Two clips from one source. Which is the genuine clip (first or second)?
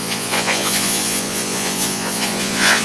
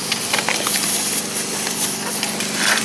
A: second